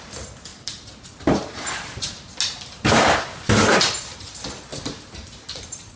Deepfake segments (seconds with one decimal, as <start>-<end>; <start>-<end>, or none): 0.5-2.3; 4.7-6.0